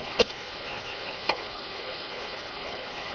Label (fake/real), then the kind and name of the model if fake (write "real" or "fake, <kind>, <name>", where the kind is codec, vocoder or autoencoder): fake, codec, HILCodec